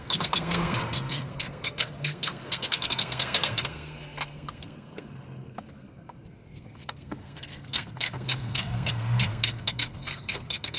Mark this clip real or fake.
fake